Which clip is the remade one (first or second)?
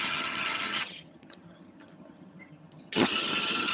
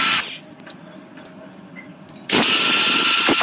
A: first